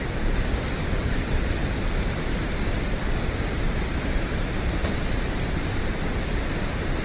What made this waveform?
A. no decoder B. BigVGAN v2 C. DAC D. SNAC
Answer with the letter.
B